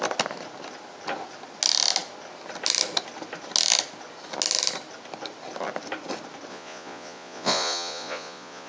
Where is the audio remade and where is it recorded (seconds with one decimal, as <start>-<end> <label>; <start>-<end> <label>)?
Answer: 0.0-6.5 recorded; 6.5-8.7 remade